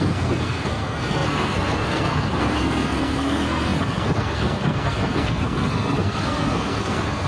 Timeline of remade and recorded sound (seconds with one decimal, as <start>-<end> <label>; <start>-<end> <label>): 0.0-7.3 remade